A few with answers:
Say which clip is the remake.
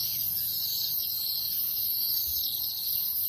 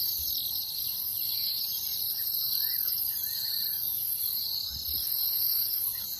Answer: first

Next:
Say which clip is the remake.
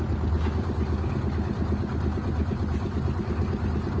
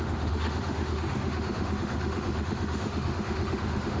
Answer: second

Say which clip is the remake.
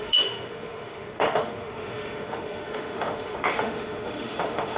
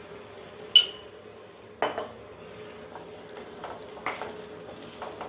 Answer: first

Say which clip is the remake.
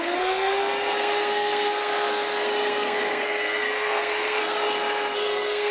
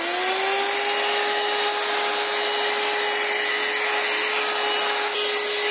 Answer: first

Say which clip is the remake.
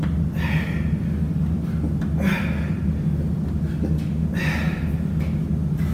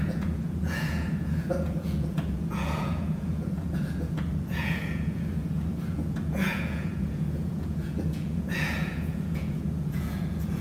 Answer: second